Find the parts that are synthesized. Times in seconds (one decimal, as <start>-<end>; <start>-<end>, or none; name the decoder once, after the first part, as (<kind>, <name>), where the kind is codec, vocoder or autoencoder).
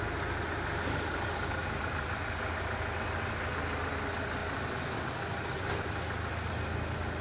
1.6-2.6 (vocoder, BigVGAN v2); 4.4-6.5